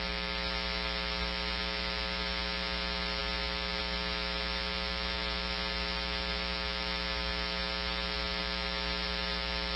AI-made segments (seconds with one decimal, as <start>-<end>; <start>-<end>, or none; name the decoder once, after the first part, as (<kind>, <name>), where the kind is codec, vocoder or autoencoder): none